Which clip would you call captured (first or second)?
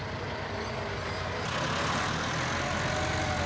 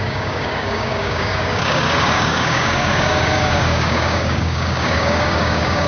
first